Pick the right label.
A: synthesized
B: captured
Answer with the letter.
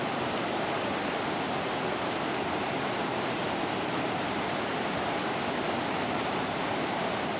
B